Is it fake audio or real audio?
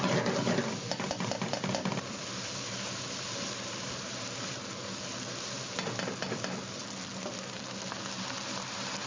real